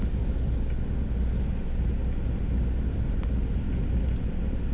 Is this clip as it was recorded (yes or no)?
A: yes